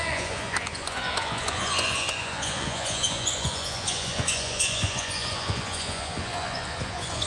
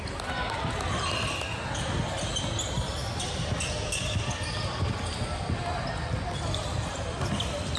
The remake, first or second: first